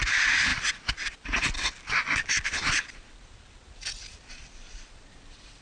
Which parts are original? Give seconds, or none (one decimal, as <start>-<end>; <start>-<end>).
0.0-5.6